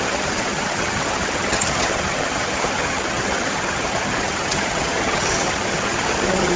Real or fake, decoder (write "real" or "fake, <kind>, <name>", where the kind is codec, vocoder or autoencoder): fake, vocoder, HiFi-GAN